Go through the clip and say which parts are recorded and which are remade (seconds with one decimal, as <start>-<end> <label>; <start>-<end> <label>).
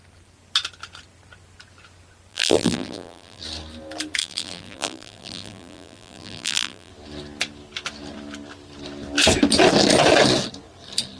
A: 0.0-2.3 recorded; 2.3-3.4 remade; 3.4-4.2 recorded; 4.2-6.9 remade; 6.9-11.2 recorded